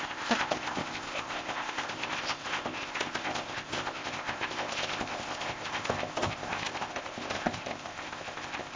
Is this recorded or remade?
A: remade